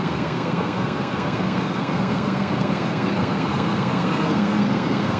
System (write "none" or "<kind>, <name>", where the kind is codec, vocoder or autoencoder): codec, SNAC